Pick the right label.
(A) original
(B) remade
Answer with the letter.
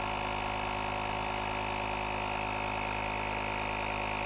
A